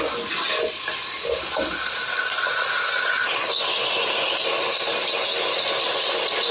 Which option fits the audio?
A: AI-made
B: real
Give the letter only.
B